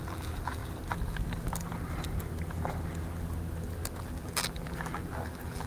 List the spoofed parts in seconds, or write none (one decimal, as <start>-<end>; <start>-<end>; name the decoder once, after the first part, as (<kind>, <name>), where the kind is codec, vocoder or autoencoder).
0.0-0.6 (vocoder, BigVGAN v2); 4.0-5.7